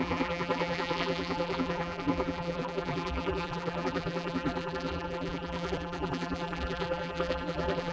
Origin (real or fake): fake